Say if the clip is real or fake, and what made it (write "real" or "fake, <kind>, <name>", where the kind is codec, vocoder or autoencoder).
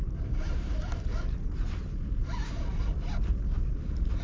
real